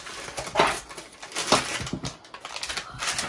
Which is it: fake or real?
real